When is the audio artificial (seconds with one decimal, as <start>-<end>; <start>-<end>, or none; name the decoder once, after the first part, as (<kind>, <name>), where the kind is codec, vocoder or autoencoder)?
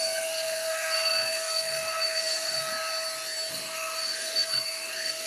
0.0-2.7 (codec, SNAC); 3.5-5.3